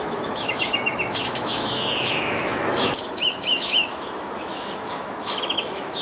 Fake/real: fake